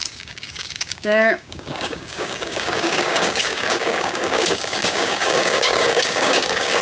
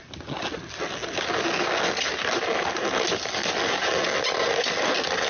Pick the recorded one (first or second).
second